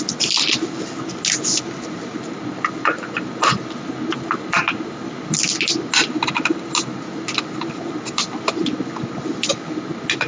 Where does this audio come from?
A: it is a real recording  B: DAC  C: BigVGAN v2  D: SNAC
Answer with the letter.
A